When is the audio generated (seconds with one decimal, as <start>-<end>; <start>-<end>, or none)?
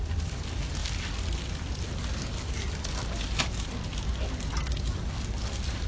none